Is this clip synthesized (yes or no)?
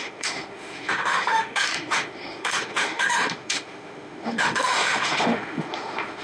yes